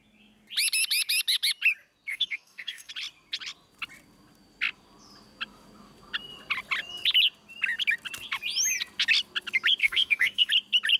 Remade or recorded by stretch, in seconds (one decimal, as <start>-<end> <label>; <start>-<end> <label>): 0.0-2.1 recorded; 2.1-2.9 remade; 2.9-9.8 recorded; 9.8-10.5 remade; 10.5-11.0 recorded